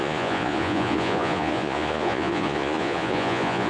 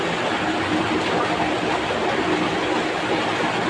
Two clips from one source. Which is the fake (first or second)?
first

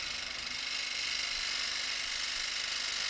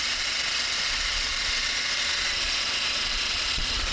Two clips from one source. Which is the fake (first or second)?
second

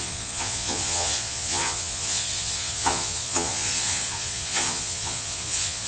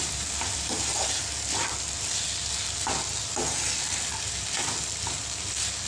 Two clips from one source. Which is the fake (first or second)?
first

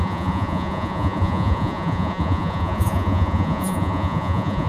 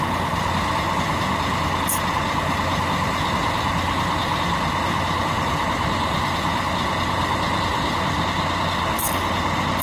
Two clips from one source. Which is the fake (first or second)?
first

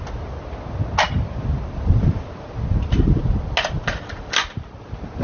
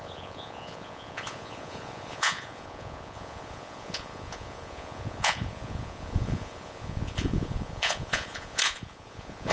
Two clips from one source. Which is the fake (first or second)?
second